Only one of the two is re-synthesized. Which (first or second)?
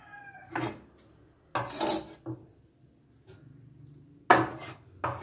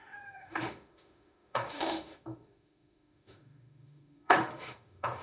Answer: second